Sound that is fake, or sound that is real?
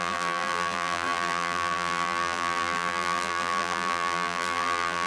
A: fake